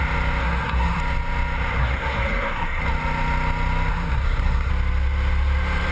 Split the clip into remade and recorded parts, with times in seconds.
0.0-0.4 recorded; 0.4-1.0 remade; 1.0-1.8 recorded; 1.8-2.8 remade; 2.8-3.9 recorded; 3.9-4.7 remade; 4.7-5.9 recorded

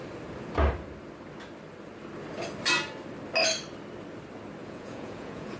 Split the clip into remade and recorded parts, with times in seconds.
0.0-4.6 recorded; 4.6-5.6 remade

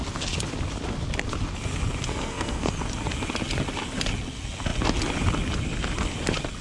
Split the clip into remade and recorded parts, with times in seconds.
0.0-2.1 recorded; 2.1-2.7 remade; 2.7-6.6 recorded

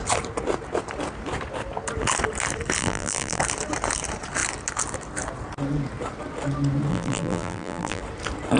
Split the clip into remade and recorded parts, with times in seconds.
0.0-2.8 recorded; 2.8-3.4 remade; 3.4-6.9 recorded; 6.9-8.0 remade; 8.0-8.6 recorded